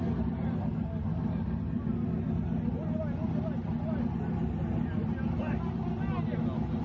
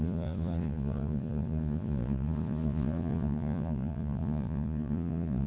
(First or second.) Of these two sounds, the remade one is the second